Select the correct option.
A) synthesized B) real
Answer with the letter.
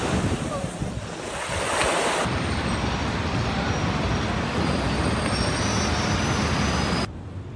B